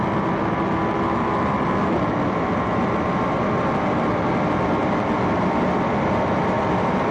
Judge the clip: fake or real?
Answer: real